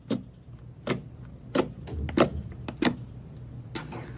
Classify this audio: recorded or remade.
recorded